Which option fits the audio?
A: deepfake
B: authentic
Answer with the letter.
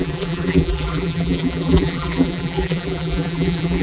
A